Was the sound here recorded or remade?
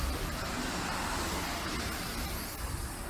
recorded